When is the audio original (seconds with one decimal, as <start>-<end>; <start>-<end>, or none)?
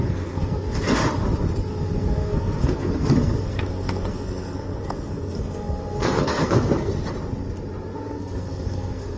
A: 1.0-1.7; 6.9-8.0